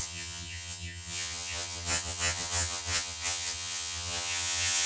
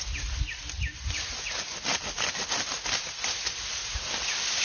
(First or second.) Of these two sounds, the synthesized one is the first